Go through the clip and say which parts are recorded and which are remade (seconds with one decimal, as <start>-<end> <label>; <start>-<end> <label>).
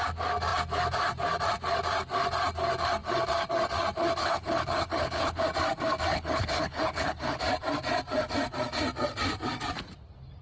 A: 0.0-4.2 recorded; 4.2-5.4 remade; 5.4-6.1 recorded; 6.1-7.4 remade; 7.4-10.4 recorded